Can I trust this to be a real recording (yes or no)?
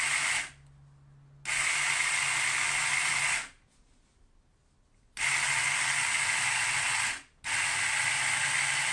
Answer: yes